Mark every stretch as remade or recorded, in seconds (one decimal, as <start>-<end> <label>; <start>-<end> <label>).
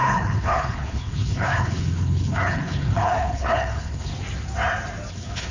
0.0-4.1 remade; 4.1-5.1 recorded; 5.1-5.5 remade